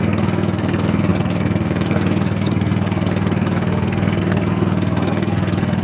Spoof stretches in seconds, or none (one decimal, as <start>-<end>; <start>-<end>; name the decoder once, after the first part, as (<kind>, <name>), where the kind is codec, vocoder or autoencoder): 0.0-5.8 (codec, SNAC)